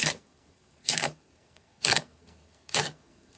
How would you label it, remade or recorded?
remade